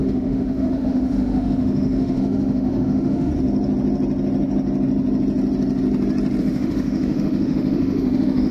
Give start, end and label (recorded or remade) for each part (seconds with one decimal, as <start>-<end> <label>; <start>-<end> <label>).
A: 0.0-3.3 remade; 3.3-6.4 recorded; 6.4-8.5 remade